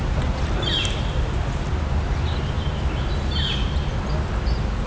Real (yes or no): yes